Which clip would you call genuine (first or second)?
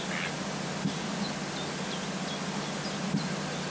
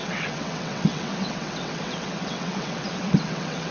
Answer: first